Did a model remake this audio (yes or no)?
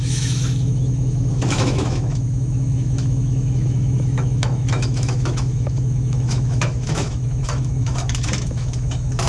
yes